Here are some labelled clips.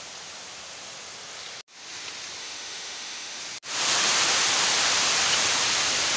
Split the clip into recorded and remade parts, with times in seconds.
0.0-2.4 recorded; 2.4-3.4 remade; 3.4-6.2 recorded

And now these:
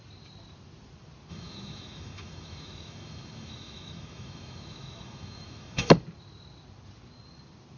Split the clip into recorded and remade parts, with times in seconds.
0.0-1.3 recorded; 1.3-5.9 remade; 5.9-7.8 recorded

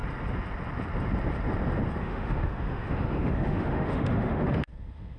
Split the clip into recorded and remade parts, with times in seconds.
0.0-2.0 recorded; 2.0-5.2 remade

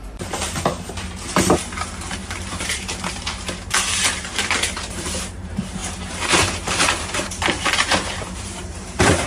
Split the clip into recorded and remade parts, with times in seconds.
0.0-0.7 remade; 0.7-1.4 recorded; 1.4-9.3 remade

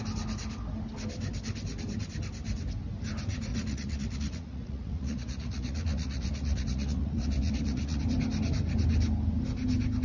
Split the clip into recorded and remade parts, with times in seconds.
0.0-3.5 recorded; 3.5-8.0 remade; 8.0-10.0 recorded

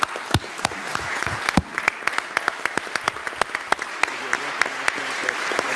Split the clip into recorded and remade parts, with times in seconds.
0.0-0.9 recorded; 0.9-1.4 remade; 1.4-5.8 recorded

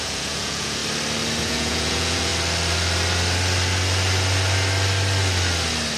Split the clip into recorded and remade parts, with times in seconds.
0.0-0.8 remade; 0.8-1.4 recorded; 1.4-2.3 remade; 2.3-6.0 recorded

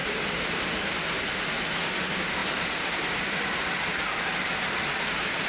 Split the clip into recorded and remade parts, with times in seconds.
0.0-5.5 recorded